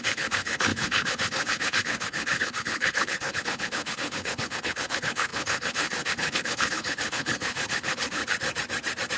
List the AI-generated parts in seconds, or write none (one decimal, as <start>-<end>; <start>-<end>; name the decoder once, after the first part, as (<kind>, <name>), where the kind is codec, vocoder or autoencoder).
0.0-8.2 (codec, HILCodec)